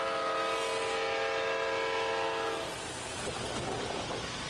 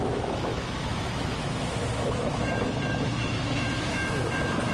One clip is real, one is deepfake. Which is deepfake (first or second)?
second